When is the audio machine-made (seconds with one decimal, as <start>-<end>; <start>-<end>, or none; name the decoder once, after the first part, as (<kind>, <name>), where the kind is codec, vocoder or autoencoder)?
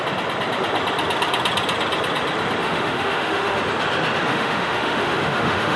2.6-3.6 (autoencoder, DAC-VAE); 4.3-5.8